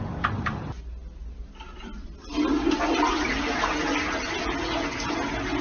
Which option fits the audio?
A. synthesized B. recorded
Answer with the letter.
B